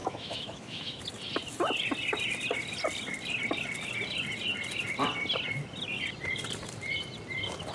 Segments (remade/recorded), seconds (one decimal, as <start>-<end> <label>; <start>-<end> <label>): 0.0-1.0 remade; 1.0-7.7 recorded